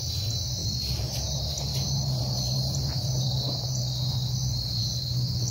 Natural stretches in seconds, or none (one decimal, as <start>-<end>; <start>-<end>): 0.0-0.6; 3.8-4.4; 5.0-5.5